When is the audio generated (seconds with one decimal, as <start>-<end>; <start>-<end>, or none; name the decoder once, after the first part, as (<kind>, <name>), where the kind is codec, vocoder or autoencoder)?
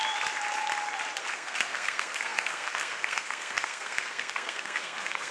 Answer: 1.2-5.3 (codec, SNAC)